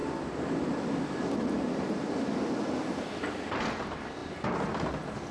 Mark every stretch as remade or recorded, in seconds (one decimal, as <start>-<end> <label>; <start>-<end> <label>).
0.0-5.3 recorded